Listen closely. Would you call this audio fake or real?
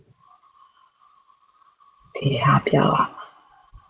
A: fake